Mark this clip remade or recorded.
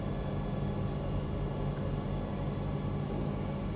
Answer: recorded